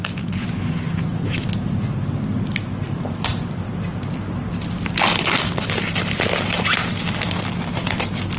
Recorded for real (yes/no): yes